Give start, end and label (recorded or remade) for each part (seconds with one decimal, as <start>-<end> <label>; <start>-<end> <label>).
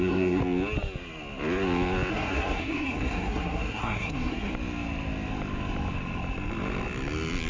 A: 0.0-0.4 remade; 0.4-2.1 recorded; 2.1-4.5 remade; 4.5-7.5 recorded